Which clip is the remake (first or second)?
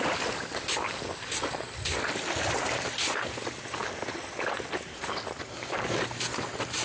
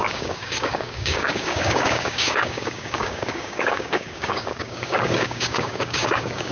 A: second